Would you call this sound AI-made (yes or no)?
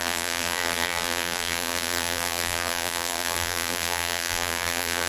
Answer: yes